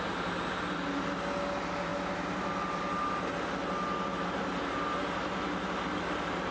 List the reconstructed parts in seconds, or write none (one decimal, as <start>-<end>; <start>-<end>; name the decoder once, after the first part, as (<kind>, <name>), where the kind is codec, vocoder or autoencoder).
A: none